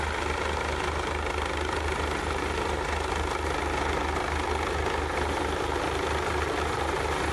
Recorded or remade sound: recorded